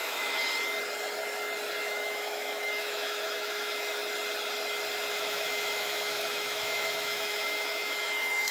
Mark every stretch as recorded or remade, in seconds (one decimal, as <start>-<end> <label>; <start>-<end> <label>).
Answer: 0.0-0.4 remade; 0.4-1.8 recorded; 1.8-4.0 remade; 4.0-5.1 recorded; 5.1-8.5 remade